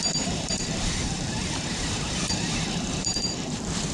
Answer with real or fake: fake